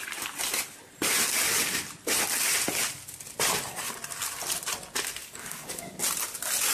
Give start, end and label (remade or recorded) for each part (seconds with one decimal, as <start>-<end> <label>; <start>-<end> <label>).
0.0-5.2 recorded; 5.2-6.0 remade; 6.0-6.7 recorded